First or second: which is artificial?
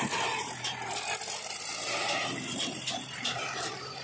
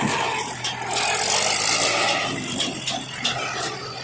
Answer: first